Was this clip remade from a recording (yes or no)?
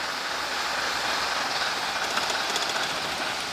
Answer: no